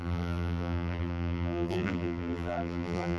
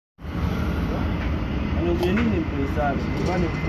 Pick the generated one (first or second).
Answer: first